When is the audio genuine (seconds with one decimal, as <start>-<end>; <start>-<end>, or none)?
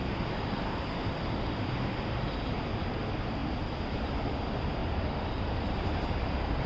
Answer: 1.4-4.8